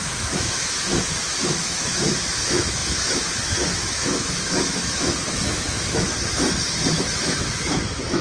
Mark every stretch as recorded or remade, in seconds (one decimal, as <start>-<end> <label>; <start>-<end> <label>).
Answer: 0.0-6.1 remade; 6.1-6.9 recorded; 6.9-8.2 remade